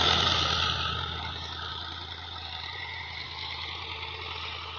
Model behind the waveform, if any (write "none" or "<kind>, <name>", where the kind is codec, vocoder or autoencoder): none